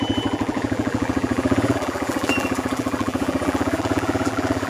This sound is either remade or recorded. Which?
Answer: remade